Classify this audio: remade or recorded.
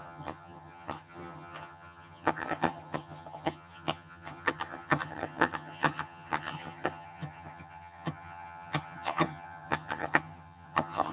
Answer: remade